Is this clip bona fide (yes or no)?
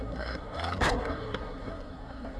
no